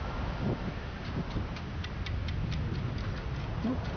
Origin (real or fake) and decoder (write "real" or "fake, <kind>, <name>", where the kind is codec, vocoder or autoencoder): real